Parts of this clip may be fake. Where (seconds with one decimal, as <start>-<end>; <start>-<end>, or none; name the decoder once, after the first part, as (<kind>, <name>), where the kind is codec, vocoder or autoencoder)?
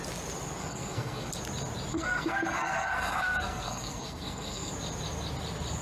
0.6-1.3 (codec, SNAC); 1.9-4.7